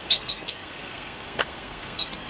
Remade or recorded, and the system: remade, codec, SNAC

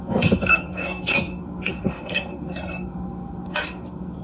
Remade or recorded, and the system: remade, codec, SNAC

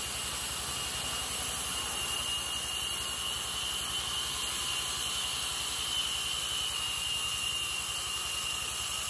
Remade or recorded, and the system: recorded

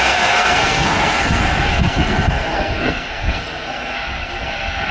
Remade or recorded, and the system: remade, codec, SNAC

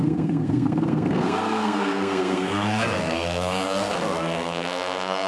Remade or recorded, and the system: remade, codec, SNAC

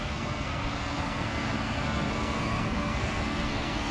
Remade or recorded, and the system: remade, codec, SNAC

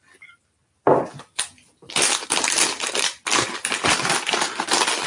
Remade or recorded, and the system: recorded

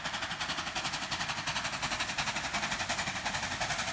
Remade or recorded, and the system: recorded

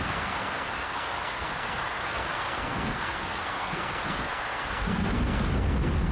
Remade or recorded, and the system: remade, codec, SNAC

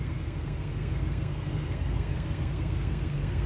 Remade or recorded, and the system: remade, codec, SNAC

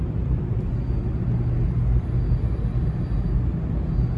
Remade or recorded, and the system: recorded